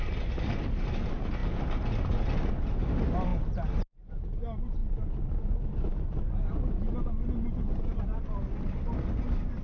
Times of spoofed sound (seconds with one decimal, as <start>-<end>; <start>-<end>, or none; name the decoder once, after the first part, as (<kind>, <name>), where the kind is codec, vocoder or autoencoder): none

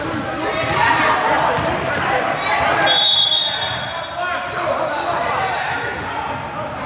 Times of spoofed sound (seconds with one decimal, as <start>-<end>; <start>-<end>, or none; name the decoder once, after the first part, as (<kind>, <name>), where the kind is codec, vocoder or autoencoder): none

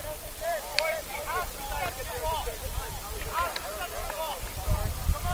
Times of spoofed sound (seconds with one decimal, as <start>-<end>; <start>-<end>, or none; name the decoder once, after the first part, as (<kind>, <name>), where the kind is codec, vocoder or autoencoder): 0.0-5.3 (vocoder, BigVGAN v2)

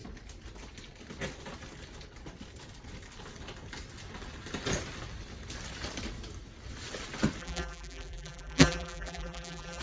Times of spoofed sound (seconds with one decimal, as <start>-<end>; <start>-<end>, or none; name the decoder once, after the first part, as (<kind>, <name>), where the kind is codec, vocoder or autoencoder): 7.4-9.8 (vocoder, BigVGAN v2)

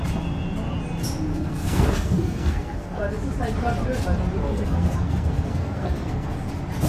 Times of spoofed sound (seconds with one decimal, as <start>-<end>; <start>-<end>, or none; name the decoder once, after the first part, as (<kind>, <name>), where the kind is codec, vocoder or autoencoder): 1.3-3.0 (codec, SNAC); 4.4-6.5

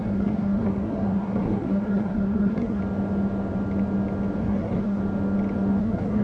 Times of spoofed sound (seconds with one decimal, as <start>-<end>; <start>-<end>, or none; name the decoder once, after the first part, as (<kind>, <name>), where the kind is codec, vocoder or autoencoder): 0.0-2.8 (codec, SNAC); 4.4-5.0; 5.8-6.2

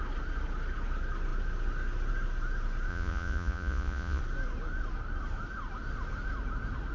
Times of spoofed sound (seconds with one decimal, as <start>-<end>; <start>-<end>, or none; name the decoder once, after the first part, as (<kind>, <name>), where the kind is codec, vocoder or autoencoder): 2.9-4.2 (vocoder, Vocos)